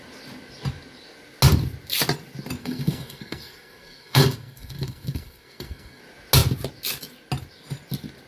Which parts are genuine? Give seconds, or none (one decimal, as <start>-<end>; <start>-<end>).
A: 0.0-2.6; 6.0-8.3